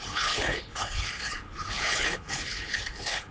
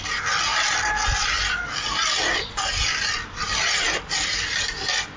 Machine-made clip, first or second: first